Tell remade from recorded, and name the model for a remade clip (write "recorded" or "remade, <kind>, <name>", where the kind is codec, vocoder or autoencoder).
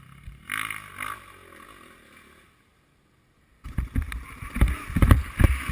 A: recorded